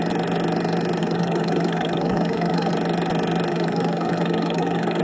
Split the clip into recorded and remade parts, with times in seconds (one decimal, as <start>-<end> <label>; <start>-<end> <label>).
0.0-1.0 recorded; 1.0-2.7 remade; 2.7-3.5 recorded; 3.5-5.0 remade